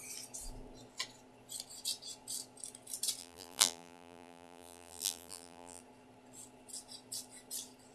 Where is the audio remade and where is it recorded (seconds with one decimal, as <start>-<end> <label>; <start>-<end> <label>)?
0.0-3.2 recorded; 3.2-5.8 remade; 5.8-7.9 recorded